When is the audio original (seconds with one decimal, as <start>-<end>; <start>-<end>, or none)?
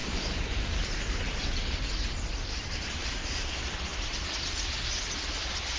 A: 3.5-5.8